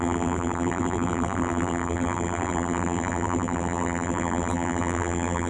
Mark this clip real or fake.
fake